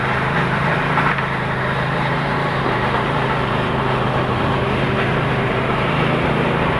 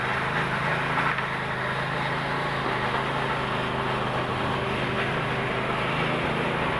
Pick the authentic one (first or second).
second